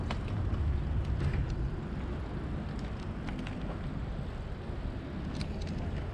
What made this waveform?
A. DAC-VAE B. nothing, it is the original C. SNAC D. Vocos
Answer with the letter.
B